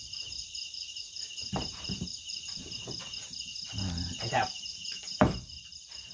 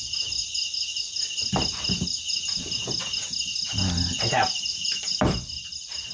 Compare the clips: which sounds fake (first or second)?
first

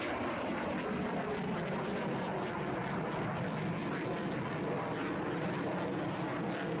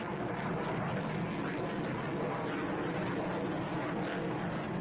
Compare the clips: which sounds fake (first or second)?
first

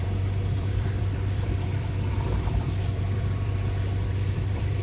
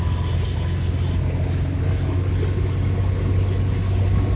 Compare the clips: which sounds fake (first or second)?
first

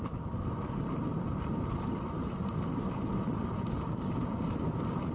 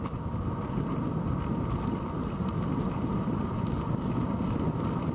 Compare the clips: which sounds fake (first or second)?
first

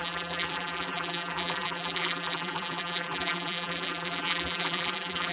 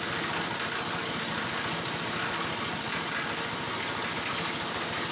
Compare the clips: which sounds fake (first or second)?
first